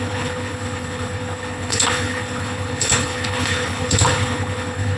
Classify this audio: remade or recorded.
remade